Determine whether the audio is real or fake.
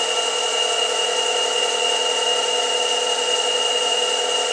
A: real